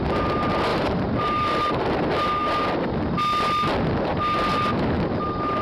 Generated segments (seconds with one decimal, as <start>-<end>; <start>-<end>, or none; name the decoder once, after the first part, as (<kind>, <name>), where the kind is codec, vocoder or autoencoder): 0.7-1.8 (vocoder, BigVGAN v2)